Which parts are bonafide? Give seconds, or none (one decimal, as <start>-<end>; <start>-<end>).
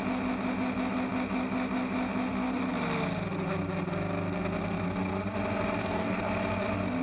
0.0-5.8; 6.3-7.0